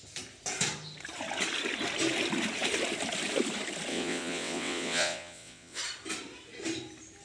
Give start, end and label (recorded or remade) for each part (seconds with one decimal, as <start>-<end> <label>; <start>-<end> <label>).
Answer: 0.0-3.9 recorded; 3.9-5.8 remade; 5.8-7.2 recorded

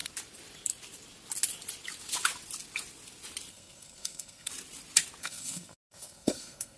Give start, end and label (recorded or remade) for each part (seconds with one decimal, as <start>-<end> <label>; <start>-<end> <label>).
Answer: 0.0-3.5 recorded; 3.5-4.5 remade; 4.5-5.2 recorded; 5.2-6.8 remade

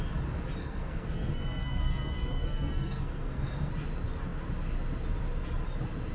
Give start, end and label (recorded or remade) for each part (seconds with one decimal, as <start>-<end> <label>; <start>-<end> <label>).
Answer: 0.0-0.6 recorded; 0.6-3.7 remade; 3.7-6.1 recorded

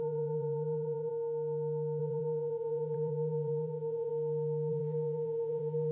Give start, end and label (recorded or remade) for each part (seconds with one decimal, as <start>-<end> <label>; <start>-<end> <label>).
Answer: 0.0-1.1 remade; 1.1-2.0 recorded; 2.0-4.1 remade; 4.1-4.7 recorded; 4.7-5.9 remade

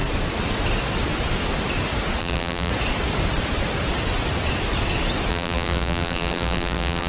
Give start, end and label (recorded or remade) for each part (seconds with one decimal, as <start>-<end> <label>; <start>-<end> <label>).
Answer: 0.0-2.2 recorded; 2.2-2.7 remade; 2.7-5.3 recorded; 5.3-7.1 remade

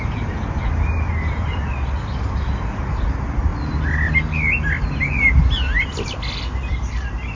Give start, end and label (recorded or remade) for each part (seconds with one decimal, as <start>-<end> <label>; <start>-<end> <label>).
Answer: 0.0-7.4 recorded

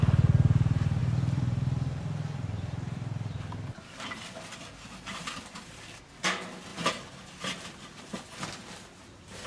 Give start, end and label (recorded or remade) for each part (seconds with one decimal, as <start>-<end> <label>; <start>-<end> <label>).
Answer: 0.0-1.0 recorded; 1.0-6.0 remade; 6.0-6.7 recorded; 6.7-8.0 remade; 8.0-9.5 recorded

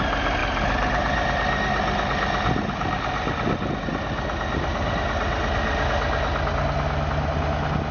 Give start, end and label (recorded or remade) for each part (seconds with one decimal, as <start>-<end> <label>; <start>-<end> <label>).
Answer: 0.0-7.9 recorded